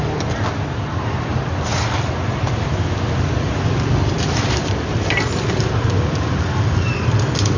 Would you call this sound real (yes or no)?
no